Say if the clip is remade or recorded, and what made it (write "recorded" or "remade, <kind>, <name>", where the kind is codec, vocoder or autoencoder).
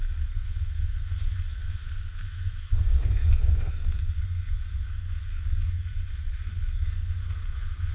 remade, codec, SNAC